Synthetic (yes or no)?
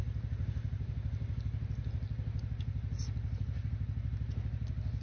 no